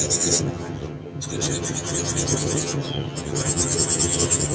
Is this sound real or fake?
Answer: fake